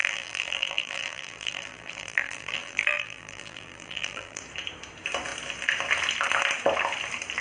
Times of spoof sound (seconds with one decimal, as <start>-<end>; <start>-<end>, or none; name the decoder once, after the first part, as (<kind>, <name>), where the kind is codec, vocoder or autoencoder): 0.0-4.4 (vocoder, BigVGAN v2)

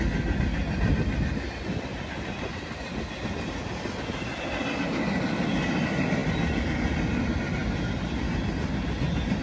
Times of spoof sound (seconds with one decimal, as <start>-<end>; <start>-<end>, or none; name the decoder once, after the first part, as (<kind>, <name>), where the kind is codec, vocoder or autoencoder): none